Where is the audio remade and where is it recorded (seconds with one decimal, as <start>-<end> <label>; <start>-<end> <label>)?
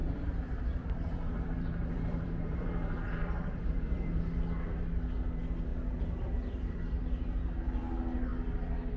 0.0-4.2 remade; 4.2-9.0 recorded